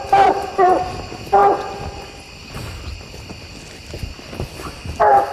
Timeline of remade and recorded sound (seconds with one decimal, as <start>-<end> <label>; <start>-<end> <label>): 0.0-5.3 recorded